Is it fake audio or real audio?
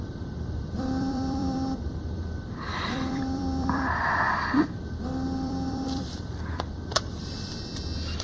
fake